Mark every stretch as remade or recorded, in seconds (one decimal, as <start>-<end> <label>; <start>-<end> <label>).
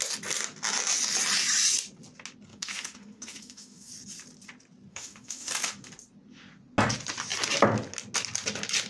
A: 0.0-2.5 recorded; 2.5-3.9 remade; 3.9-4.9 recorded; 4.9-5.5 remade; 5.5-8.9 recorded